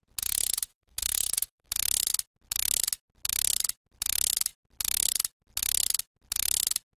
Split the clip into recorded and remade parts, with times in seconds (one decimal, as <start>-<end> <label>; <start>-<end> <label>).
0.0-0.7 recorded; 0.7-1.7 remade; 1.7-7.0 recorded